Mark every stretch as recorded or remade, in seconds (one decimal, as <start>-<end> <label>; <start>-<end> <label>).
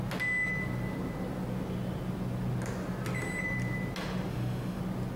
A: 0.0-4.3 recorded; 4.3-4.8 remade; 4.8-5.2 recorded